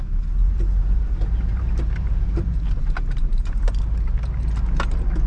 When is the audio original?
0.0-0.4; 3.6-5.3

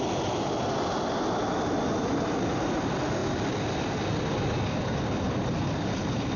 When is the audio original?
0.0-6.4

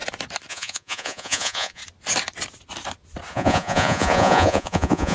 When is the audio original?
0.0-0.5; 1.8-3.3

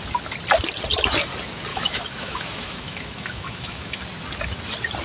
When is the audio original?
0.0-1.7; 4.0-5.0